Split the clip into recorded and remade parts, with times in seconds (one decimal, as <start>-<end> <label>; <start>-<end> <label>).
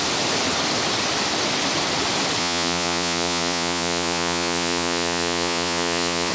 0.0-2.4 recorded; 2.4-6.3 remade